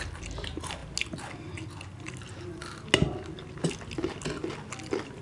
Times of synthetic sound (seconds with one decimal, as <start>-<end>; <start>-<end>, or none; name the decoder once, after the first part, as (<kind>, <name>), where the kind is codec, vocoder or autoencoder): none